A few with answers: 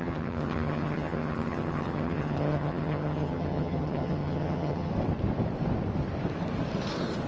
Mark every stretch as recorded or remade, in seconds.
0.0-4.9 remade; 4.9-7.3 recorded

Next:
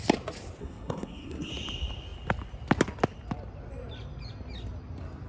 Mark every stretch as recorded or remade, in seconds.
0.0-0.6 recorded; 0.6-1.5 remade; 1.5-5.3 recorded